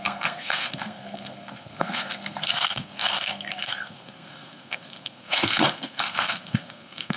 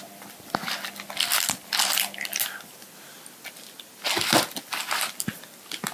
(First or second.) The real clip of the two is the second